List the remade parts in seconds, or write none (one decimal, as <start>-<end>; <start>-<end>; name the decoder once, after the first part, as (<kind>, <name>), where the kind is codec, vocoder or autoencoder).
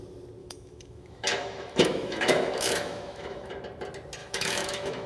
0.4-3.5 (autoencoder, DAC-VAE); 4.2-5.1